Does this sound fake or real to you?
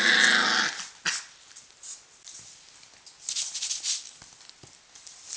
real